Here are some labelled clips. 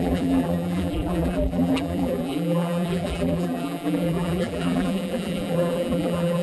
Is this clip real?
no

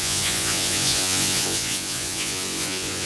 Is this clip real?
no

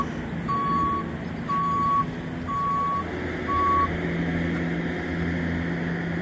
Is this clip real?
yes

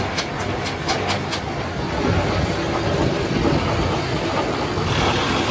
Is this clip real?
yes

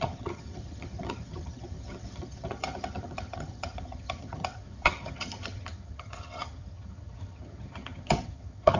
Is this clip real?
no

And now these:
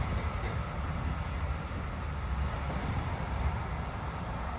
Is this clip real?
yes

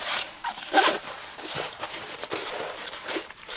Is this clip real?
no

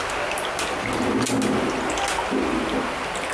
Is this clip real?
yes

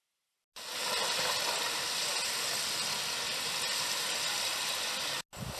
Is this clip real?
yes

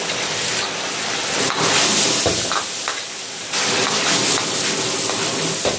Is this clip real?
yes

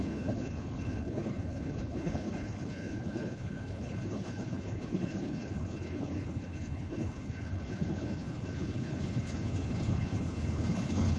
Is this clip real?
no